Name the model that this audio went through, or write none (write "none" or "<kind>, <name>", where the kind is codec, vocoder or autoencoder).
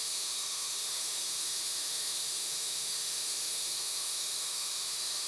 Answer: autoencoder, DAC-VAE